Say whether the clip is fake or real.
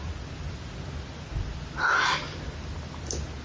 real